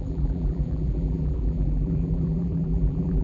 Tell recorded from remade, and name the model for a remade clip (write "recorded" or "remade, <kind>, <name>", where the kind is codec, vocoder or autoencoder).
remade, vocoder, BigVGAN v2